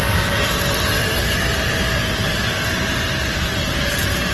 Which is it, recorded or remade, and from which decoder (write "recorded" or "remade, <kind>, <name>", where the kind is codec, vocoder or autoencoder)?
recorded